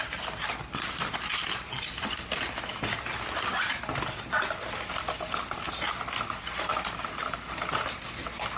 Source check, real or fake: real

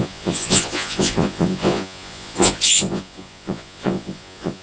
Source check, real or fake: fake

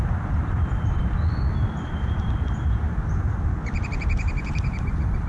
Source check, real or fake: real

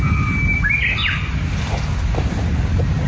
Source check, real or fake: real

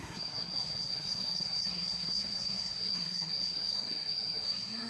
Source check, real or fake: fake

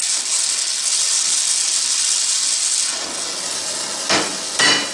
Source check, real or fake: real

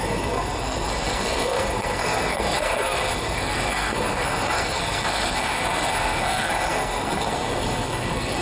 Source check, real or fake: fake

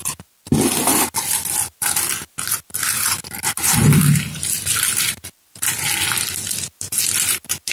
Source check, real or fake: real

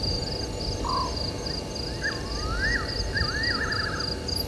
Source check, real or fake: real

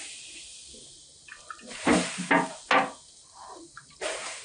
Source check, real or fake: real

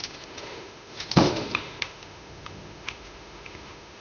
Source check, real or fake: fake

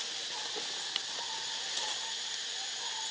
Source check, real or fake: real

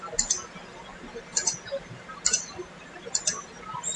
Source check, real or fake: real